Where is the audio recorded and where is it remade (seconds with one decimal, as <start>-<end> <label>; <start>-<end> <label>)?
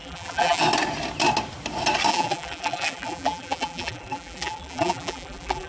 0.0-0.6 remade; 0.6-2.1 recorded; 2.1-5.7 remade